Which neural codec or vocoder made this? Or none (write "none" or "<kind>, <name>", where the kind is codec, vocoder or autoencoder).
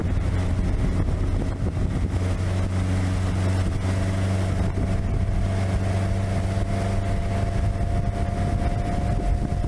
none